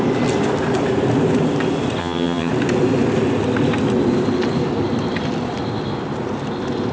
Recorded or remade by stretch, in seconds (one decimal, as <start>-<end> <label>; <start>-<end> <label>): 0.0-2.0 recorded; 2.0-2.5 remade; 2.5-6.9 recorded

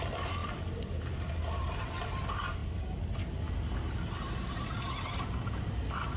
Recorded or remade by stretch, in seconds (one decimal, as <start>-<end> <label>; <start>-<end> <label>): 0.0-6.2 recorded

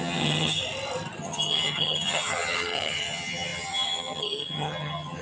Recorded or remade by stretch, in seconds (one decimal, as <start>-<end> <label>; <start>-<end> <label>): 0.0-0.6 remade; 0.6-1.2 recorded; 1.2-5.2 remade

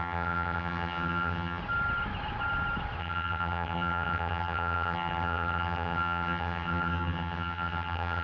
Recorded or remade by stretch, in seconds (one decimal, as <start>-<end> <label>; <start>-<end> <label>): 0.0-1.6 remade; 1.6-3.0 recorded; 3.0-8.2 remade

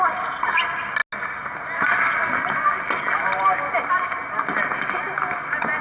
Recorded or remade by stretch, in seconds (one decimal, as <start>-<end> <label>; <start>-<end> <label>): 0.0-5.8 recorded

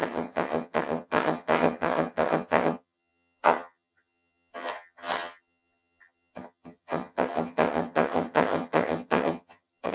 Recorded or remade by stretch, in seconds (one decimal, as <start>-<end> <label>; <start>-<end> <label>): 0.0-9.9 remade

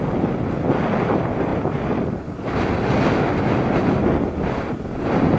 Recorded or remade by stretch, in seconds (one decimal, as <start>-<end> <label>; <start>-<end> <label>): 0.0-5.4 recorded

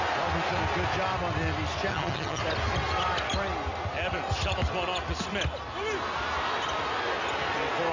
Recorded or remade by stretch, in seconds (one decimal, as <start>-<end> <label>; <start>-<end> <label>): 0.0-1.9 recorded; 1.9-2.4 remade; 2.4-7.9 recorded